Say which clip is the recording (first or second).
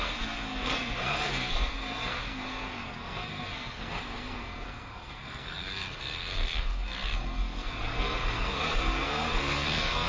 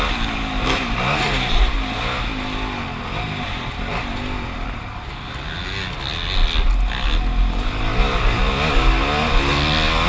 second